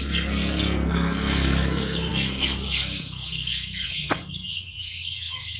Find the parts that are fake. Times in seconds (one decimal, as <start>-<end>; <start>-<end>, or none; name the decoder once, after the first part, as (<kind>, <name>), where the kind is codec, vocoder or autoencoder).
0.0-5.6 (codec, SNAC)